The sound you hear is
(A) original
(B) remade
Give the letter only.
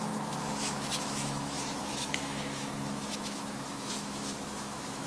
B